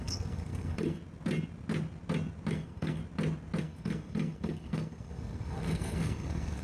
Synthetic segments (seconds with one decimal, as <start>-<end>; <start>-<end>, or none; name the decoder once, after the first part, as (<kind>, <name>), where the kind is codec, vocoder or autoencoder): 0.0-1.0 (codec, SNAC); 2.5-3.0; 3.6-6.6